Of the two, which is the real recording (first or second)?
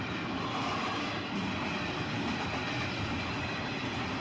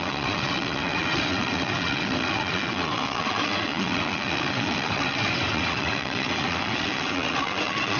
first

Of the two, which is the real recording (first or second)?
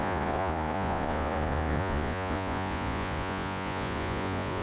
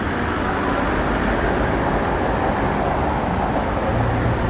second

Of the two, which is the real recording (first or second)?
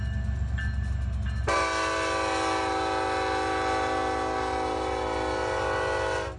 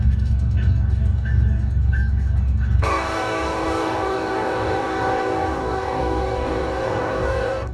first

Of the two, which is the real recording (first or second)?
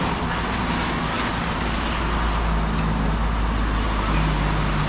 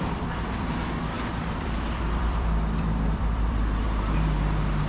first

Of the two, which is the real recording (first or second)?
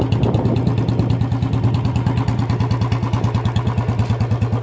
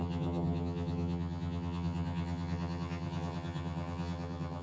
first